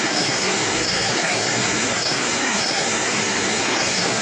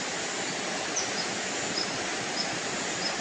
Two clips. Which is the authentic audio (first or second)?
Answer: second